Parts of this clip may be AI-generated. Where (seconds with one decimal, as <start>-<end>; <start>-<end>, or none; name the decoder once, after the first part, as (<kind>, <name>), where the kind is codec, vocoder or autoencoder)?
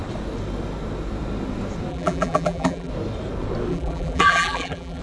1.9-2.9 (vocoder, BigVGAN v2); 3.7-5.0